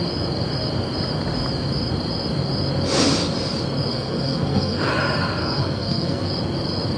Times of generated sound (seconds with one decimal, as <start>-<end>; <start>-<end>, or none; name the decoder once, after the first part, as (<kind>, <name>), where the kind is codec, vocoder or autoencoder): 3.9-4.9 (codec, SNAC); 5.4-6.3